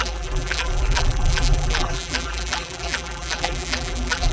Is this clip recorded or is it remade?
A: remade